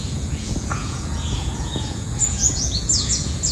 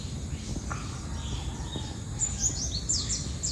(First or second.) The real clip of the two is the second